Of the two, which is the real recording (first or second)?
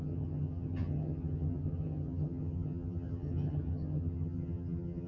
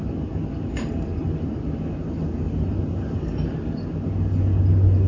second